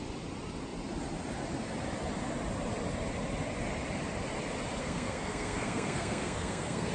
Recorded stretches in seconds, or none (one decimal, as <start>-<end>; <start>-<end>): 0.0-4.8